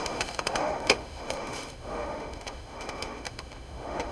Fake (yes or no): yes